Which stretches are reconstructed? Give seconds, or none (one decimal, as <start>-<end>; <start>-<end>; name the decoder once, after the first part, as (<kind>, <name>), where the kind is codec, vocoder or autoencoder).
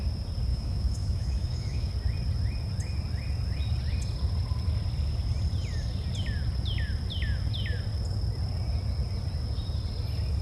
0.5-1.9 (autoencoder, DAC-VAE)